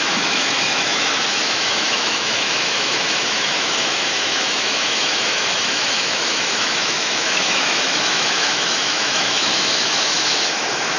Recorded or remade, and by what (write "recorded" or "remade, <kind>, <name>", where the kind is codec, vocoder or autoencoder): remade, autoencoder, DAC-VAE